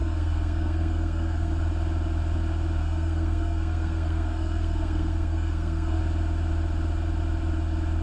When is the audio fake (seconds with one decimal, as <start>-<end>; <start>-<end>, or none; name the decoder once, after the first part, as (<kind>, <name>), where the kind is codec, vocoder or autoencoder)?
0.0-1.5 (codec, SNAC); 2.8-6.0